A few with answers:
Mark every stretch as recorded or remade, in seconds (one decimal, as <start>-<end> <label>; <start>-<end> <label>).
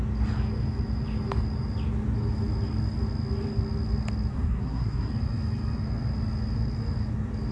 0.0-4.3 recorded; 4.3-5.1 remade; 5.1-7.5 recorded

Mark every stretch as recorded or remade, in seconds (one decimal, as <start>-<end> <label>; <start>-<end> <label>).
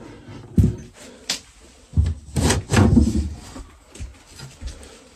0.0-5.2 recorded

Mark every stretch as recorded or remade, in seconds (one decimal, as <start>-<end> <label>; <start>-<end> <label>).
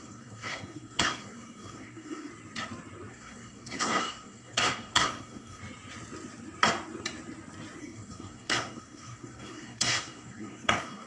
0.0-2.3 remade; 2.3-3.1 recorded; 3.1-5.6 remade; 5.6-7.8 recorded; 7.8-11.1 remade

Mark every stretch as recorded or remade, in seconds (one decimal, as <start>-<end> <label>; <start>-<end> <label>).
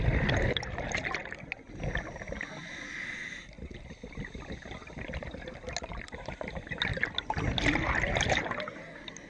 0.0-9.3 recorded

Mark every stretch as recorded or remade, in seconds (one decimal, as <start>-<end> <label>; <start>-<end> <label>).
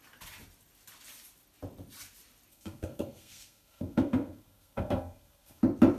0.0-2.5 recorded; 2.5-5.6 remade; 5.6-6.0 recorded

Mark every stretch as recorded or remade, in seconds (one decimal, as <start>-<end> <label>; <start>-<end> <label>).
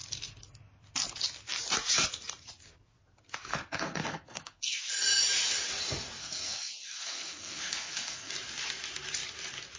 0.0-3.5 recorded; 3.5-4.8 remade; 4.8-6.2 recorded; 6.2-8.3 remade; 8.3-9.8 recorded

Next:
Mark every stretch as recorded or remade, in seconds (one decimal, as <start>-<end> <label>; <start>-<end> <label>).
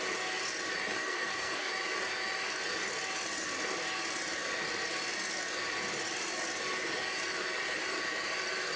0.0-1.0 recorded; 1.0-1.7 remade; 1.7-8.8 recorded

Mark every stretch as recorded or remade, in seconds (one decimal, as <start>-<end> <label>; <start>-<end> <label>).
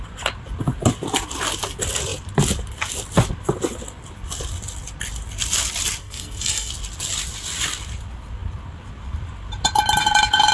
0.0-6.0 recorded; 6.0-6.7 remade; 6.7-10.5 recorded